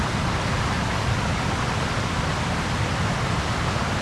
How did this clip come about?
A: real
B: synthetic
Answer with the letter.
A